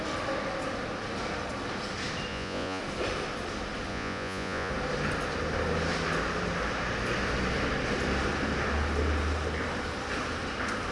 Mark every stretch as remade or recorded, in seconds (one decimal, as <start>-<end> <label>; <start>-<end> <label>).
0.0-2.3 recorded; 2.3-2.8 remade; 2.8-3.9 recorded; 3.9-4.7 remade; 4.7-10.9 recorded